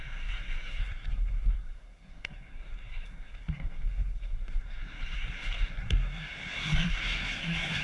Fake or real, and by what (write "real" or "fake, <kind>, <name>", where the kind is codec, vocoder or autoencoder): fake, codec, SNAC